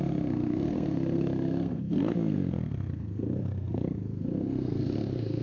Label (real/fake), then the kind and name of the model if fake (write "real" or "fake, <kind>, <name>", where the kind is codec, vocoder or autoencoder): fake, codec, SNAC